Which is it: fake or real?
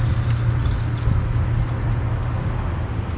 real